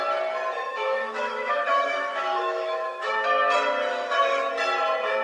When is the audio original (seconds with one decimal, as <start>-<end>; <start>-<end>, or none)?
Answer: 0.0-0.7; 3.1-3.9; 4.5-5.2